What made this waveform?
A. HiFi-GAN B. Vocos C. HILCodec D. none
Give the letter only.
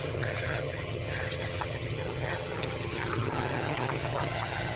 A